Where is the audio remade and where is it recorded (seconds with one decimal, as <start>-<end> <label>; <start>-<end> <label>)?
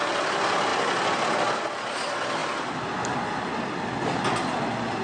0.0-5.0 recorded